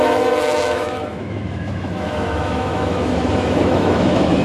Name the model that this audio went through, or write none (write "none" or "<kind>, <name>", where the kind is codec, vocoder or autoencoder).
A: autoencoder, DAC-VAE